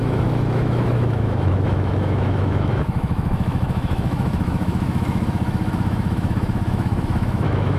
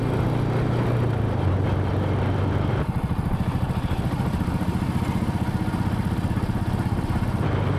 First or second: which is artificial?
first